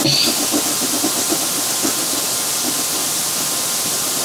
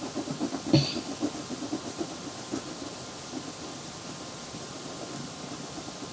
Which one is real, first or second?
first